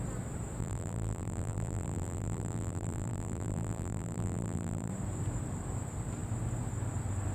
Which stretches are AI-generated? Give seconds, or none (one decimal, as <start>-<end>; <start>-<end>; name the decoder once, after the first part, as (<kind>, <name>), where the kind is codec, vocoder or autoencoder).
0.6-4.9 (vocoder, BigVGAN v2)